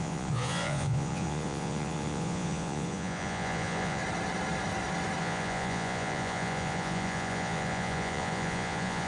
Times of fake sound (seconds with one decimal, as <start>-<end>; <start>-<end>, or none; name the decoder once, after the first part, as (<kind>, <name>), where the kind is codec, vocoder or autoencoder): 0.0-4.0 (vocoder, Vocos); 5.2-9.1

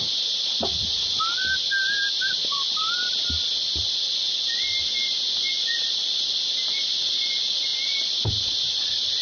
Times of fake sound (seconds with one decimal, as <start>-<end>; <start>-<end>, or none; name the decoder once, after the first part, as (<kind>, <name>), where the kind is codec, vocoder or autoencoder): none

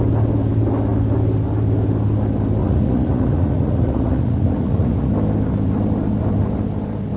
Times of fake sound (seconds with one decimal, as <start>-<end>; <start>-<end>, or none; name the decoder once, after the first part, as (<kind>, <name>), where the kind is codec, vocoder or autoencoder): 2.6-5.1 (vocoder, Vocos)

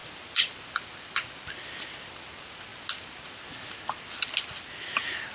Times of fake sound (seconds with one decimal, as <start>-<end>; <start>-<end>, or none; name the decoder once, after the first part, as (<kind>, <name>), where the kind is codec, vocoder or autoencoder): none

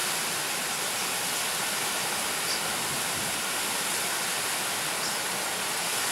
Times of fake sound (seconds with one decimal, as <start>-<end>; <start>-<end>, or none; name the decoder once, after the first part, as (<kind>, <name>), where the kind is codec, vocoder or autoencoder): none

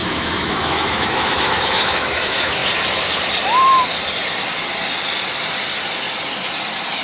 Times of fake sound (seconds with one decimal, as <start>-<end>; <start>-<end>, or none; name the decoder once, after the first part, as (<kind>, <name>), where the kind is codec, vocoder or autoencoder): 0.0-2.6 (autoencoder, DAC-VAE)

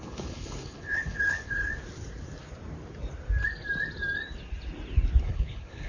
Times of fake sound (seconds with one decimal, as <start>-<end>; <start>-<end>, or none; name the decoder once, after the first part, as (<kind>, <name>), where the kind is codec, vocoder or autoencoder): 0.0-1.7 (codec, HILCodec); 5.2-5.9